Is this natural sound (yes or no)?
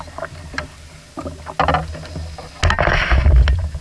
yes